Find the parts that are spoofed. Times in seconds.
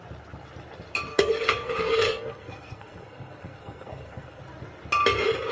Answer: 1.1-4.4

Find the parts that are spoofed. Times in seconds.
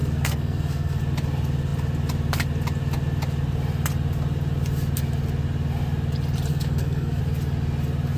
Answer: 0.0-1.0; 6.5-7.2